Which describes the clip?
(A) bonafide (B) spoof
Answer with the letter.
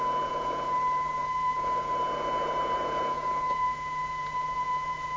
B